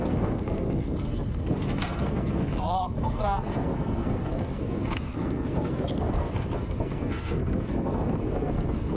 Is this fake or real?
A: fake